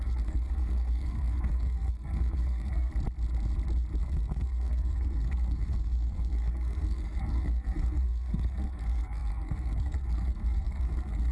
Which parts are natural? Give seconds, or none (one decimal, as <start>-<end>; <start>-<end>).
2.9-4.0